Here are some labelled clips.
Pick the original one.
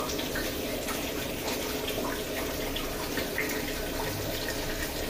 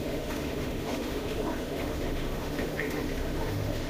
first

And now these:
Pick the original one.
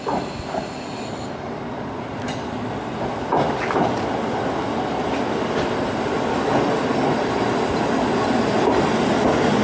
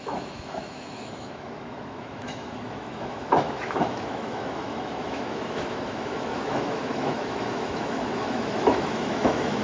first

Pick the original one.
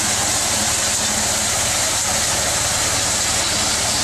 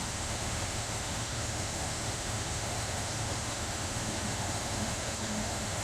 first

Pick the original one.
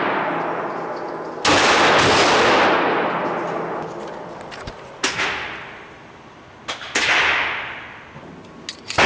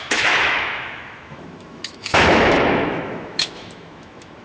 first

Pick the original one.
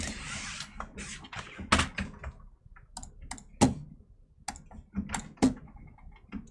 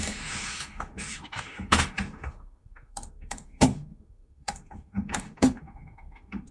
first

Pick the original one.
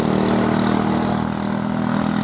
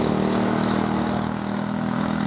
first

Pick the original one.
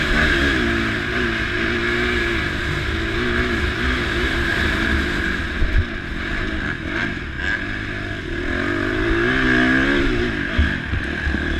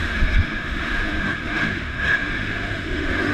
first